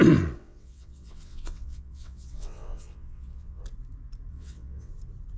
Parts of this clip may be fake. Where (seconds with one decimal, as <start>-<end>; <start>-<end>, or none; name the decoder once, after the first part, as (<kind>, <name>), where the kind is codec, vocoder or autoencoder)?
0.4-3.6 (vocoder, WaveNeXt); 4.3-4.9